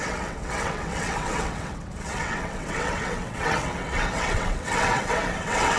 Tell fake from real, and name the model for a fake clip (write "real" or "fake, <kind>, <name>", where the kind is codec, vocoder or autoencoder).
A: fake, vocoder, WaveNeXt